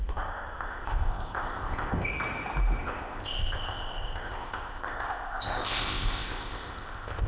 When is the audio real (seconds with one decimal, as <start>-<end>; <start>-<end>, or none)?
2.1-2.8